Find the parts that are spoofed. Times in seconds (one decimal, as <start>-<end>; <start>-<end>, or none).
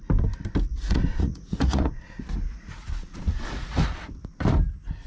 0.7-3.8